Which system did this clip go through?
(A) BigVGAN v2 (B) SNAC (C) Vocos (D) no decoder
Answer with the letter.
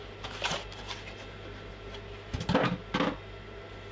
D